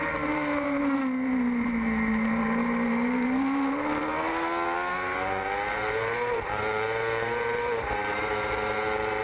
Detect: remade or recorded remade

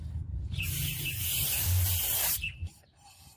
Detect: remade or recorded remade